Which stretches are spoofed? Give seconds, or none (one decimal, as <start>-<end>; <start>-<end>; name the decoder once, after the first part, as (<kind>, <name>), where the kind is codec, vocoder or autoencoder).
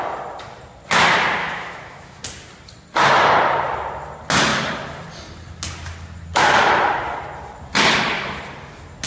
1.4-2.2 (autoencoder, DAC-VAE)